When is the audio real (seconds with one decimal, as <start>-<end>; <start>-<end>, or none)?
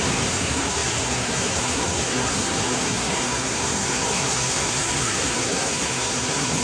none